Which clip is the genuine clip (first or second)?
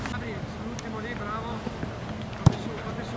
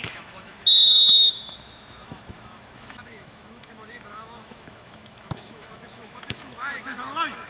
first